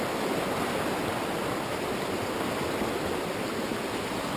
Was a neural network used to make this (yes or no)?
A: no